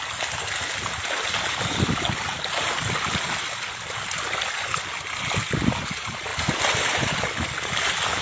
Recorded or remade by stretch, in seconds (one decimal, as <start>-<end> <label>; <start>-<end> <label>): 0.0-8.2 recorded